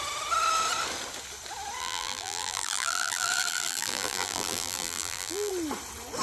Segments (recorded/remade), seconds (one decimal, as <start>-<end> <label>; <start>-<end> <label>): 0.0-1.8 recorded; 1.8-5.5 remade; 5.5-6.2 recorded